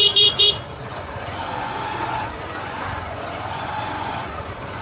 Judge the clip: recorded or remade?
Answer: remade